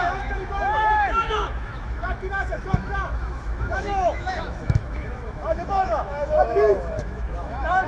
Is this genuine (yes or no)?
no